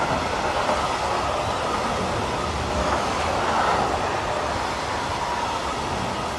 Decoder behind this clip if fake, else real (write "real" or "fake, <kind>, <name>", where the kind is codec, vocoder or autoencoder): real